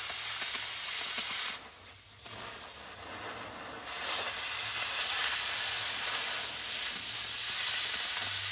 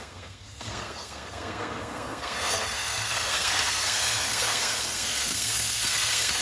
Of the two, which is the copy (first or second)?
second